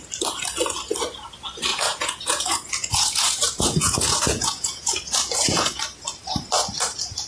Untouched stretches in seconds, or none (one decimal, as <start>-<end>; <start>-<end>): 0.0-1.7; 5.8-7.3